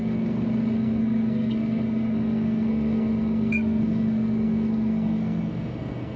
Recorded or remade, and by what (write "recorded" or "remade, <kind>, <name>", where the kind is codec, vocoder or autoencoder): remade, codec, SNAC